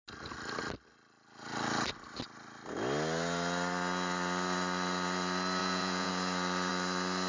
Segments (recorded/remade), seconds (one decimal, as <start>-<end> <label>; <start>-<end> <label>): 0.0-5.6 recorded; 5.6-6.1 remade; 6.1-7.3 recorded